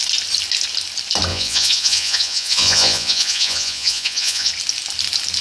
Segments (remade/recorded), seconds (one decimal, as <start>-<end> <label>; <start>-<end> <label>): 0.0-1.3 recorded; 1.3-4.5 remade; 4.5-5.4 recorded